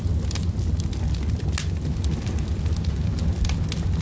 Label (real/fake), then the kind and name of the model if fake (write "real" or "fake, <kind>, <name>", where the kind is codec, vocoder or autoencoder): real